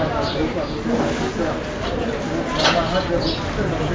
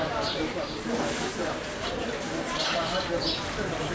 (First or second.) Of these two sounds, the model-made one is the second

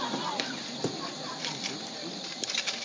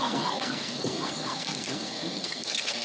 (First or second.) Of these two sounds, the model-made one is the second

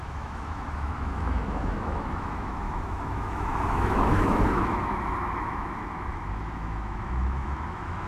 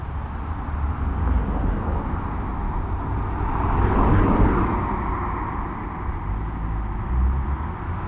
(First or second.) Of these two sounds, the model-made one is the first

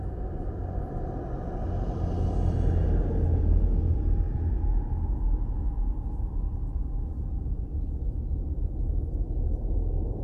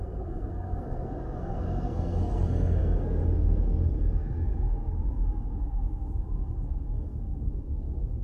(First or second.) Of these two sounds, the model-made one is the second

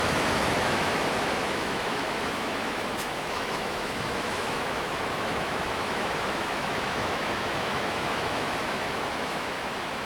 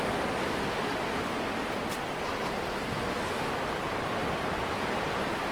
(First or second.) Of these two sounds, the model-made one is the first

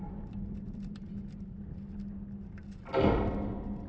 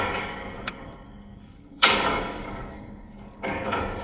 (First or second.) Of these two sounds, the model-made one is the second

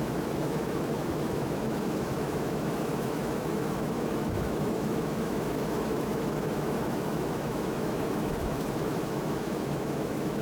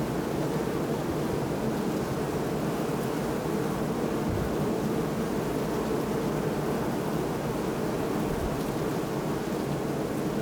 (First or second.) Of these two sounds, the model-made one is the first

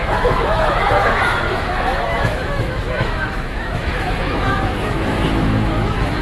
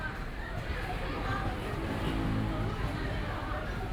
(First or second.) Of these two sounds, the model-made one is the first